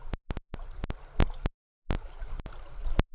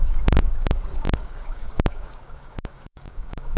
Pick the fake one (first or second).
second